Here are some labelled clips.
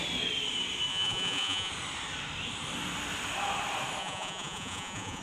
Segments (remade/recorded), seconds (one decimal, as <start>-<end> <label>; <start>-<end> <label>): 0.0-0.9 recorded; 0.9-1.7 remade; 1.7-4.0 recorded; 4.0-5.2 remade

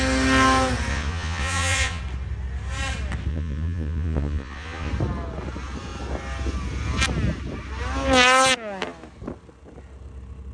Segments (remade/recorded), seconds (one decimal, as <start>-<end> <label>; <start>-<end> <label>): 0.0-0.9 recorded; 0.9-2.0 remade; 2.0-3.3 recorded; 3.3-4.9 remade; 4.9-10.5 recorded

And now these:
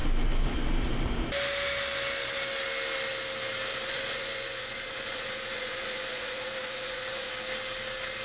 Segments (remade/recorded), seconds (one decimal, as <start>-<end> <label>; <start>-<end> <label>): 0.0-3.7 recorded; 3.7-7.3 remade; 7.3-8.2 recorded

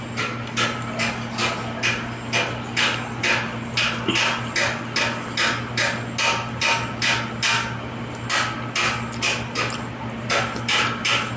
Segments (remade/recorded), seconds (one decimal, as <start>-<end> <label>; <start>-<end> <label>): 0.0-11.4 recorded

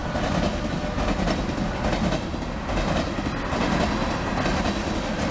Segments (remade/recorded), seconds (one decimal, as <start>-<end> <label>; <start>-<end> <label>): 0.0-5.3 recorded

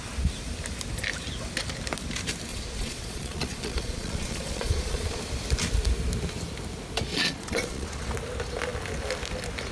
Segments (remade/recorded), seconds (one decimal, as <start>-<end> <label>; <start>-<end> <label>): 0.0-2.5 recorded; 2.5-5.2 remade; 5.2-7.1 recorded; 7.1-8.1 remade; 8.1-9.7 recorded

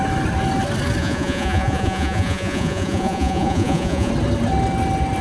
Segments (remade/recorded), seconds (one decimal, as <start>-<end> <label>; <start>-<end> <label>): 0.0-1.0 recorded; 1.0-4.1 remade; 4.1-5.2 recorded